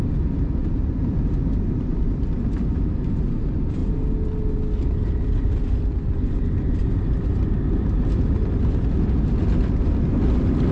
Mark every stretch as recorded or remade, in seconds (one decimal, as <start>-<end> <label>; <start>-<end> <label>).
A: 0.0-0.6 recorded; 0.6-2.2 remade; 2.2-6.8 recorded; 6.8-7.7 remade; 7.7-10.7 recorded